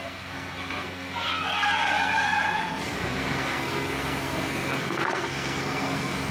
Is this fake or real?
fake